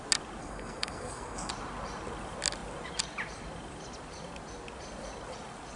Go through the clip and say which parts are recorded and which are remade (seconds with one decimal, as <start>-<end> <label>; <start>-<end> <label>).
0.0-0.4 recorded; 0.4-1.5 remade; 1.5-5.8 recorded